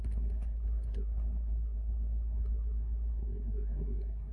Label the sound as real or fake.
fake